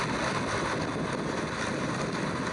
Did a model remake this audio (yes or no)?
no